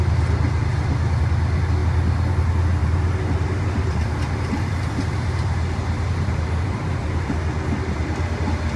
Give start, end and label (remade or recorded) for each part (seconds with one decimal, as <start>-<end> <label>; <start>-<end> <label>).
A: 0.0-2.8 recorded; 2.8-7.4 remade; 7.4-8.8 recorded